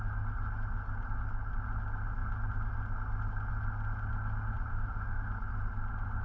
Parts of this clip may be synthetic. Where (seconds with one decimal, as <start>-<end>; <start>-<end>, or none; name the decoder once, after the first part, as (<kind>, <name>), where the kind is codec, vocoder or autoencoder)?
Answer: 4.7-5.3 (autoencoder, DAC-VAE)